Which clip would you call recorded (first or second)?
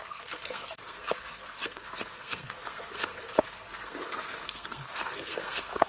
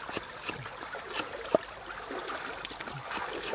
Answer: second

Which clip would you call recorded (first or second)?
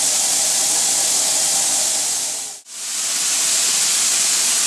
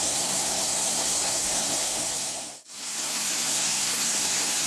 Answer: first